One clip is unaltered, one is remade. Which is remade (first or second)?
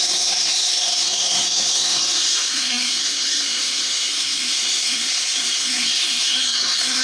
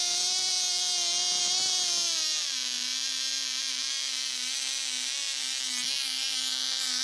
first